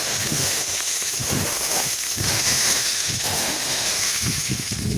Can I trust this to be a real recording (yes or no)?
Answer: no